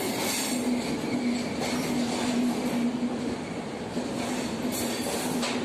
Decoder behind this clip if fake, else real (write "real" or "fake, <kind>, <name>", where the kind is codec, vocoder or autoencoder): real